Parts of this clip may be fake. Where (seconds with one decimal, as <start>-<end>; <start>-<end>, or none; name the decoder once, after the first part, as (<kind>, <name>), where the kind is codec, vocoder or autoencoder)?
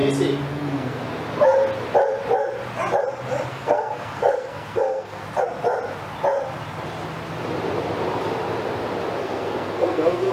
0.5-1.0 (codec, SNAC); 3.5-5.2; 9.2-10.3